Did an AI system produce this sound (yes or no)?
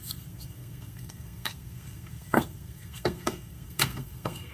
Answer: yes